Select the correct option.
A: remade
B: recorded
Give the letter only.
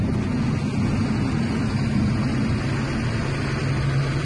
B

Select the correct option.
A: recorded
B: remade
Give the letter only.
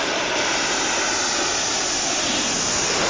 A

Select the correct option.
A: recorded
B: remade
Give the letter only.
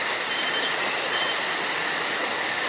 A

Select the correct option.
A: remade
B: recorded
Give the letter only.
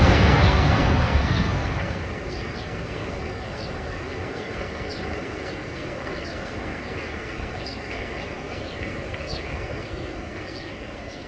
A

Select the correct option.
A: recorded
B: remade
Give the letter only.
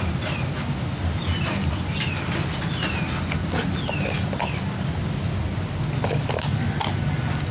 A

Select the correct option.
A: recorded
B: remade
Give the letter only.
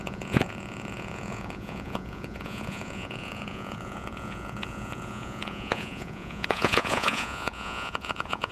B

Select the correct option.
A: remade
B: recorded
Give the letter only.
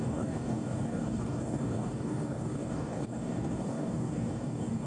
A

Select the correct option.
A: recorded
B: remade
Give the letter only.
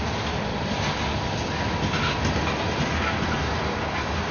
A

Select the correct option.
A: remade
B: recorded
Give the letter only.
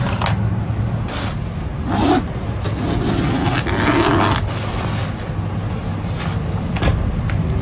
B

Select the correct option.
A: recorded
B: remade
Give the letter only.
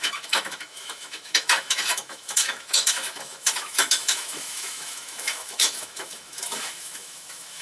B